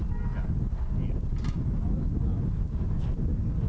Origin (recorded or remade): recorded